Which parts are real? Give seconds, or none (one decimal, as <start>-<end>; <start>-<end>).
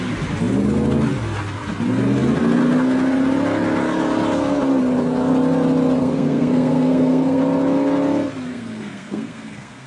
0.0-6.0; 7.4-8.5